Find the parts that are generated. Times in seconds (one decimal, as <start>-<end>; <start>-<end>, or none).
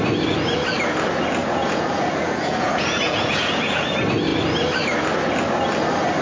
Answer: 1.4-3.9